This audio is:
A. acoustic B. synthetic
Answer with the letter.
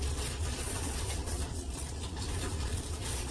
B